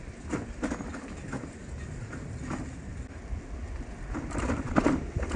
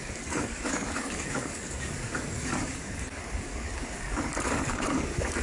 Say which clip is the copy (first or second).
second